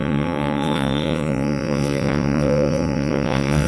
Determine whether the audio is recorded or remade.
remade